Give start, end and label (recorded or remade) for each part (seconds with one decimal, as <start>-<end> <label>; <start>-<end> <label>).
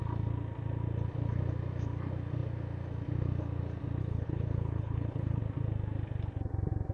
0.0-4.0 recorded; 4.0-5.4 remade; 5.4-6.9 recorded